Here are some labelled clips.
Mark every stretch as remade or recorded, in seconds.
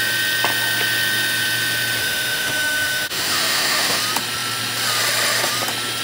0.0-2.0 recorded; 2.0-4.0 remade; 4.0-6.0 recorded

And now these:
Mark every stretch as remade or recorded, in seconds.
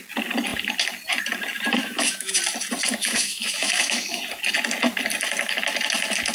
0.0-1.8 recorded; 1.8-2.4 remade; 2.4-3.0 recorded; 3.0-4.2 remade; 4.2-6.3 recorded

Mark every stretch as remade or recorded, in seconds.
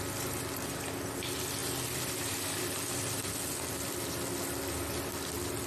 0.0-5.7 recorded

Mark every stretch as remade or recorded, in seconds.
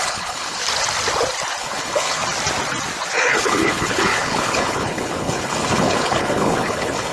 0.0-0.6 remade; 0.6-1.6 recorded; 1.6-2.2 remade; 2.2-3.2 recorded; 3.2-7.1 remade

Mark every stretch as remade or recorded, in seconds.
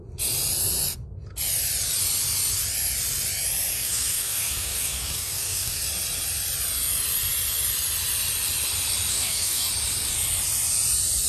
0.0-3.7 recorded; 3.7-5.8 remade; 5.8-9.1 recorded; 9.1-9.7 remade; 9.7-11.3 recorded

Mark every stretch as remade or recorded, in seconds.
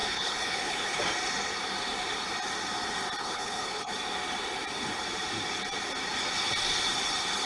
0.0-1.0 remade; 1.0-3.2 recorded; 3.2-3.9 remade; 3.9-7.5 recorded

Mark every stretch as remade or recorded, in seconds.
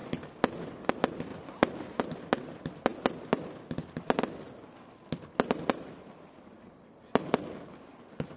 0.0-0.9 recorded; 0.9-2.9 remade; 2.9-6.4 recorded; 6.4-8.4 remade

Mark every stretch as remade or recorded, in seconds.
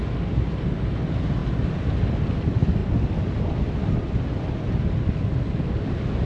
0.0-6.3 recorded